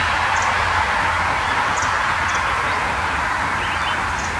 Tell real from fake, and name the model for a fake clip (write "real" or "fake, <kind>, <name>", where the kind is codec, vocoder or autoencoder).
real